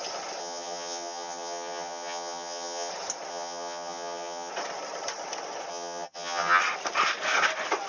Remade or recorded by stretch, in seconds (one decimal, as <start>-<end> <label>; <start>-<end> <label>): 0.0-0.4 recorded; 0.4-2.9 remade; 2.9-3.3 recorded; 3.3-4.5 remade; 4.5-5.7 recorded; 5.7-6.6 remade; 6.6-7.9 recorded